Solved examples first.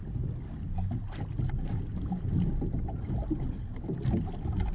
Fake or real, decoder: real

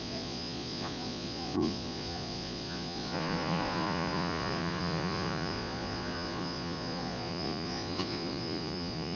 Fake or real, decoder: fake, vocoder, Vocos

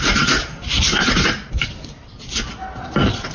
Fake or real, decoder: real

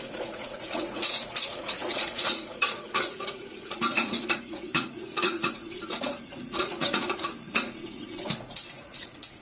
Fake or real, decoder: fake, vocoder, Vocos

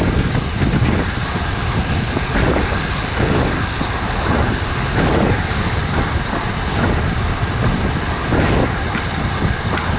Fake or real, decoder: real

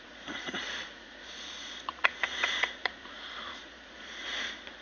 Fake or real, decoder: fake, vocoder, Vocos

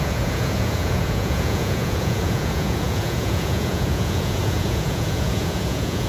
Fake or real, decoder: fake, vocoder, Vocos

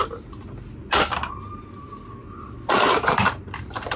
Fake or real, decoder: real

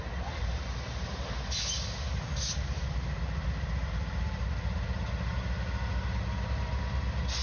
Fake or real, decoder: real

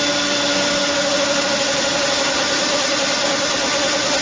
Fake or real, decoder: real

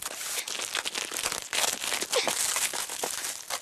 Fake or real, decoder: real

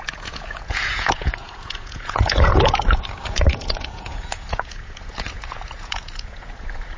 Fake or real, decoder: fake, vocoder, Vocos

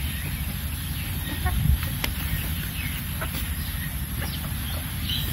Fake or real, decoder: real